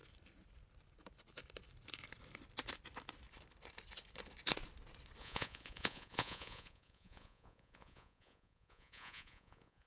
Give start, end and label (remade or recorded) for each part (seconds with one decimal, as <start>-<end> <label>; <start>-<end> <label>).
0.0-5.2 recorded; 5.2-9.9 remade